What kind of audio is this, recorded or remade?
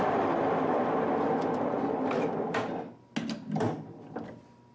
recorded